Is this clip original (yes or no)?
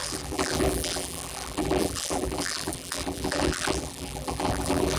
no